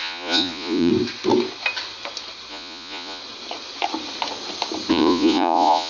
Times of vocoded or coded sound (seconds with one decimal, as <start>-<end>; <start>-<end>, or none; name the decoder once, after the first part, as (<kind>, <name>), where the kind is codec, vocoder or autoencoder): 0.0-0.9 (vocoder, Vocos); 2.5-3.2; 4.9-5.9